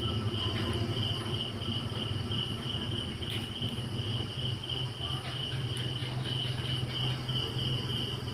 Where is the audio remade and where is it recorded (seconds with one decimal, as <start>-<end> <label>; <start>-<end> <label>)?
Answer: 0.0-8.3 recorded